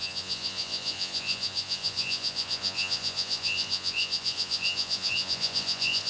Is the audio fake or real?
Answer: fake